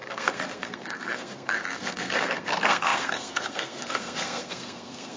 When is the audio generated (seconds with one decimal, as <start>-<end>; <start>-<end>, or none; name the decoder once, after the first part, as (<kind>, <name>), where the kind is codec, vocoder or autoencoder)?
0.0-5.2 (codec, SNAC)